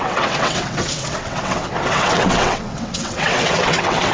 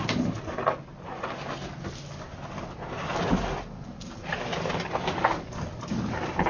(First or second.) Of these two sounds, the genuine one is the second